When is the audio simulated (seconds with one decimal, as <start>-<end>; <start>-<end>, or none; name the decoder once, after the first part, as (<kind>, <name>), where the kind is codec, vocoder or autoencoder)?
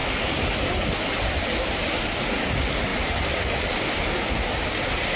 none